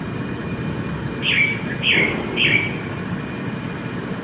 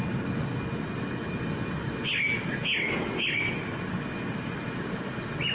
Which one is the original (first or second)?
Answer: second